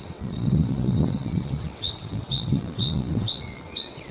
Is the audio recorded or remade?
remade